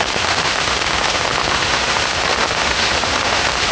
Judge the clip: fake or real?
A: fake